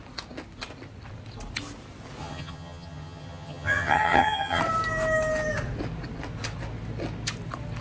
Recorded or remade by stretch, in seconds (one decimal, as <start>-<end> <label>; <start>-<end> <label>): 0.0-2.2 recorded; 2.2-4.6 remade; 4.6-7.8 recorded